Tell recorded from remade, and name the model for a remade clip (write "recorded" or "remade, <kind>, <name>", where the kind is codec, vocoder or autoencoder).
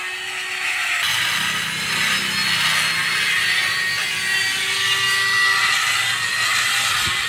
recorded